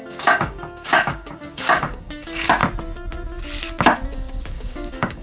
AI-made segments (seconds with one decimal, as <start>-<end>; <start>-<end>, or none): 0.0-2.6; 4.5-5.2